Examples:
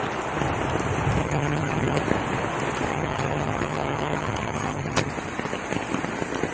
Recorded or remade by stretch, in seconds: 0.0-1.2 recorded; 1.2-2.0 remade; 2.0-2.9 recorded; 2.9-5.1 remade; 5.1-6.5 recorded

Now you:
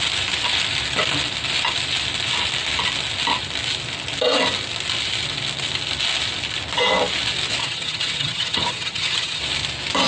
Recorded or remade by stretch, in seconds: 0.0-7.6 recorded; 7.6-9.4 remade; 9.4-10.1 recorded

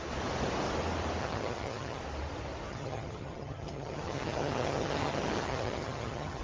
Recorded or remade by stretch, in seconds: 0.0-1.2 recorded; 1.2-2.0 remade; 2.0-2.7 recorded; 2.7-6.4 remade